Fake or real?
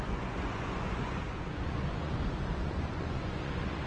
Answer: fake